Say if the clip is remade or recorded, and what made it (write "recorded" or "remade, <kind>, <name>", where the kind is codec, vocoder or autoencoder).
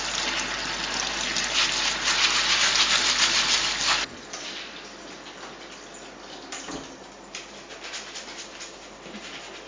recorded